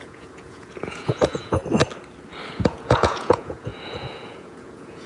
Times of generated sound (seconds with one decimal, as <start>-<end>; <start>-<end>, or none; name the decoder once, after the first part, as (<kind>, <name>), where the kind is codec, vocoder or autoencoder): 0.0-1.6 (vocoder, Vocos); 2.5-5.1